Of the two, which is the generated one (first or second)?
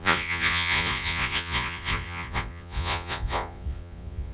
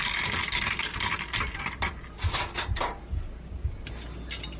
first